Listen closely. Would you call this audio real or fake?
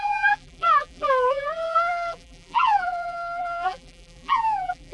fake